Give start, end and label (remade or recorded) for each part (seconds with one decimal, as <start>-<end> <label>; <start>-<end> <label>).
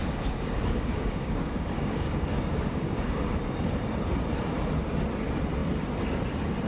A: 0.0-3.4 remade; 3.4-6.7 recorded